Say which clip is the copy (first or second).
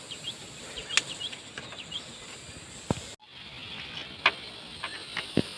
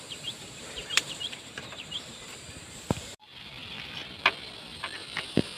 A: second